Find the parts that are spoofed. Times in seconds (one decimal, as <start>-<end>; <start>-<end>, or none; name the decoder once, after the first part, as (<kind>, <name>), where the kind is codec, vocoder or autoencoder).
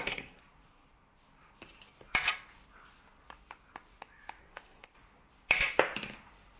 0.0-0.4 (codec, SNAC); 4.4-4.9